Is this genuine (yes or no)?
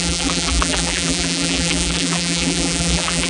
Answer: no